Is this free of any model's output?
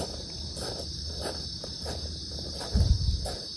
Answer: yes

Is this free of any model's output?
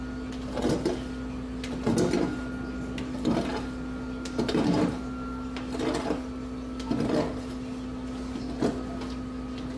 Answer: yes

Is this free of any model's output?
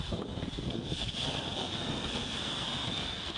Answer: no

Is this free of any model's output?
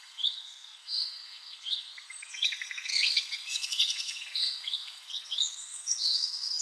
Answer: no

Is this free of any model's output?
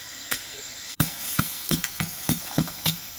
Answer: no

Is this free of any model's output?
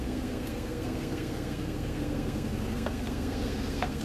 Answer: no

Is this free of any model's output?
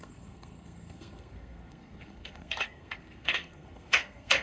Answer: no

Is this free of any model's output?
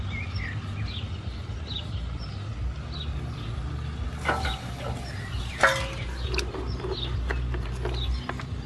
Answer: yes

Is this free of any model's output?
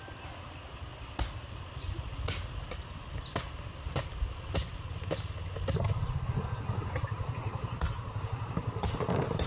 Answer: yes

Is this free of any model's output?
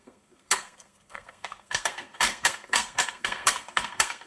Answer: no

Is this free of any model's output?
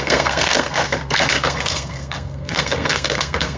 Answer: no